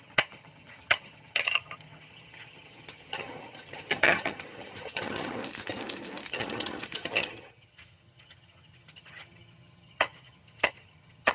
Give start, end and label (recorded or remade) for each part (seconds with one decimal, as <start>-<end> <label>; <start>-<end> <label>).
0.0-5.4 remade; 5.4-6.3 recorded; 6.3-11.3 remade